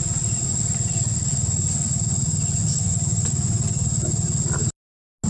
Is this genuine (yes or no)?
yes